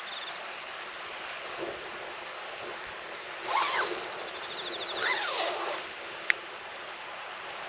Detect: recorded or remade recorded